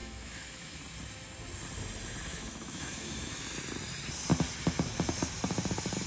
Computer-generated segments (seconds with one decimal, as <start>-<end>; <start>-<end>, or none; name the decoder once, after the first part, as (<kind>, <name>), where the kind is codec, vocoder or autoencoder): 0.0-0.8 (autoencoder, DAC-VAE); 2.3-3.4